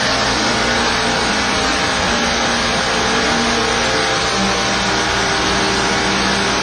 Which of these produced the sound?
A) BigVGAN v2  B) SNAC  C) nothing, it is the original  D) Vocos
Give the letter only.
C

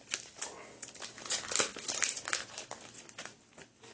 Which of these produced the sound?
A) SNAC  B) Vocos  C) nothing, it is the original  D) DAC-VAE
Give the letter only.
C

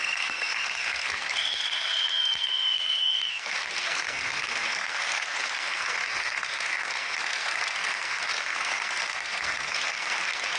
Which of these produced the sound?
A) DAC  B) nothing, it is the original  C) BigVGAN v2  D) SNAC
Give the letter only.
D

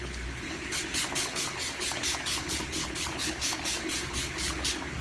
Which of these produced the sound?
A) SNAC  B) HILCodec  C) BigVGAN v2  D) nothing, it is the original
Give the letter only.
B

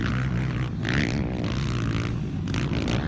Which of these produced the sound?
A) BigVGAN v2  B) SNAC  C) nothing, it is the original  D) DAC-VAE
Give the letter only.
C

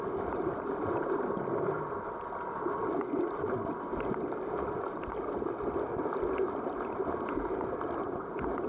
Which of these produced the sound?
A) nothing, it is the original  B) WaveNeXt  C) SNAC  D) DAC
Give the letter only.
A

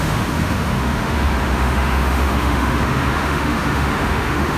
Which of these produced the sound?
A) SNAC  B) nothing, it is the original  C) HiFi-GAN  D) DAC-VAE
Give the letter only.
D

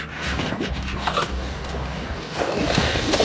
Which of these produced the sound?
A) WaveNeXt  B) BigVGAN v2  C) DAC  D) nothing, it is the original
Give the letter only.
C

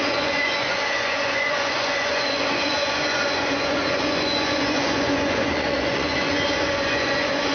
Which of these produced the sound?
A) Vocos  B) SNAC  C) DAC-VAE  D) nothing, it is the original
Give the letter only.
A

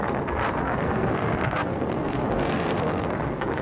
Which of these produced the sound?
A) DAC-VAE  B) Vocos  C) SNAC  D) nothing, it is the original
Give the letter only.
C